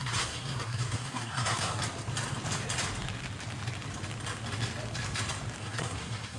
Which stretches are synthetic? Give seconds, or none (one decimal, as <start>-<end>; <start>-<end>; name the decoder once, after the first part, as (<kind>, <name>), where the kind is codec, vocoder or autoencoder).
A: 0.0-1.8 (codec, SNAC); 5.6-6.4